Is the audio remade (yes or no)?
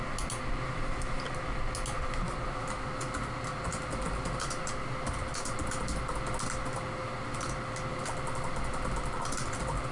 no